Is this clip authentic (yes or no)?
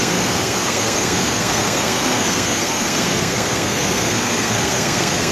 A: no